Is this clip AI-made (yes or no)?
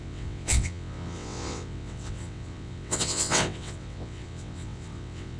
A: yes